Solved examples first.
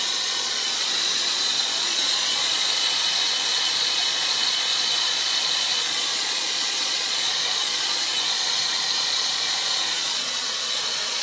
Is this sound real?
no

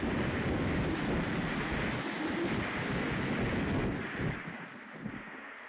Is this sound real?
yes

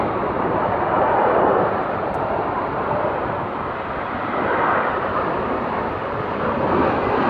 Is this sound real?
yes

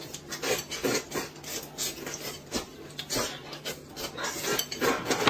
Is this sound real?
yes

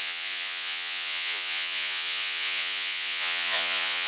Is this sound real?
no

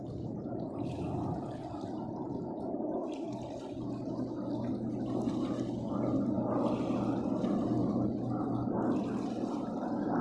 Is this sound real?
yes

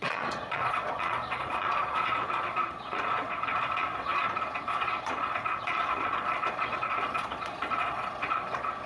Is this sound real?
no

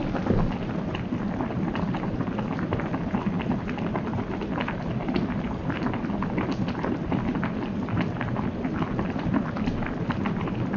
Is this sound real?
yes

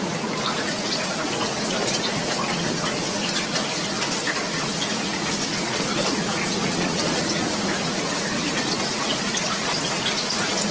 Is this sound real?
no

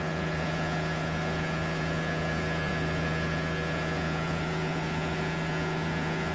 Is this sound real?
no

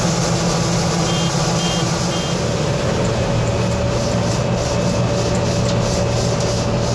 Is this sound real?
yes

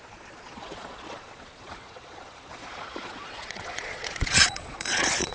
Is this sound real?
no